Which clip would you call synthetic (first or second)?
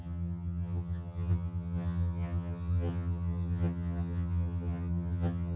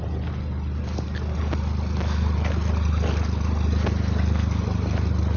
first